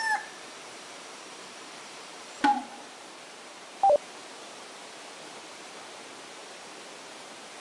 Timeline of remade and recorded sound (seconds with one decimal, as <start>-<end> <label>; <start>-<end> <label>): 0.0-4.2 remade; 4.2-5.5 recorded; 5.5-6.4 remade; 6.4-7.1 recorded; 7.1-7.6 remade